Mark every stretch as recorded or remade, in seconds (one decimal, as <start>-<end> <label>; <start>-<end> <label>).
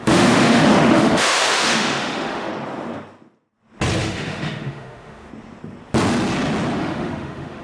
0.0-2.5 remade; 2.5-4.0 recorded; 4.0-5.3 remade; 5.3-6.8 recorded; 6.8-7.6 remade